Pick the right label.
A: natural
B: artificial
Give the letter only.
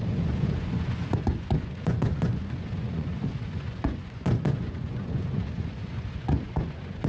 B